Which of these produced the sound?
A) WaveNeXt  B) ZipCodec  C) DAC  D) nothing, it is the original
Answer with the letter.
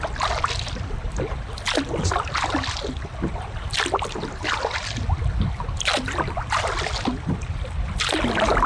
D